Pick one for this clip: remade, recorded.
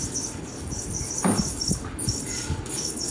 remade